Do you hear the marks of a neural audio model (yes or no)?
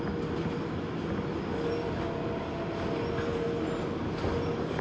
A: no